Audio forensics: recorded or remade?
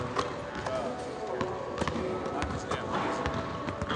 recorded